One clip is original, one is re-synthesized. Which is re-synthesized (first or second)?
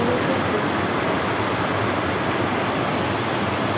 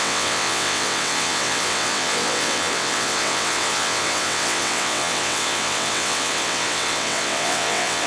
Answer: second